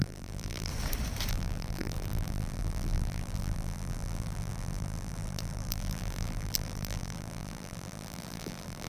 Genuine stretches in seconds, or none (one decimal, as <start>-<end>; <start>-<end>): 0.7-1.3

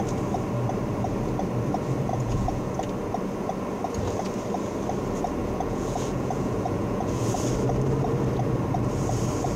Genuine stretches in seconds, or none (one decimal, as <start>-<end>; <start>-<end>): 0.0-2.1; 2.7-5.4; 7.2-9.6

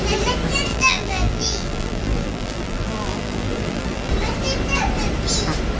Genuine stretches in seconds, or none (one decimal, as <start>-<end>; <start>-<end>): 0.0-0.7; 4.1-5.8

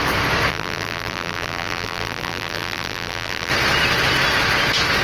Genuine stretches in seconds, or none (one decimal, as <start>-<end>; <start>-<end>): 0.0-0.5; 3.5-5.0

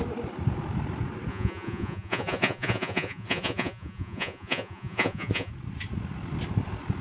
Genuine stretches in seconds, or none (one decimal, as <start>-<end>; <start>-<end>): 0.0-1.3; 5.5-7.0

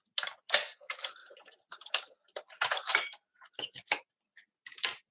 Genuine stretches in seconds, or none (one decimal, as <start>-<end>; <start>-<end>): 0.0-1.2; 4.1-5.1

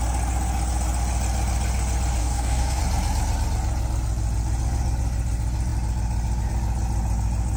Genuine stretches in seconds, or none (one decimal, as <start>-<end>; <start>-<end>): 0.0-2.2; 2.8-7.6

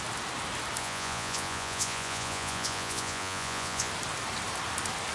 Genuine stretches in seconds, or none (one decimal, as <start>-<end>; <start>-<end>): 0.0-0.8; 3.9-5.1